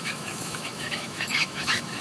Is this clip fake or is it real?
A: fake